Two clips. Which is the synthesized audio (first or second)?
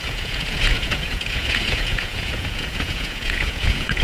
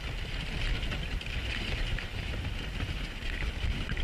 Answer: first